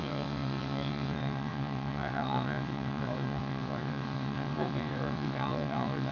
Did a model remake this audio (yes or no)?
yes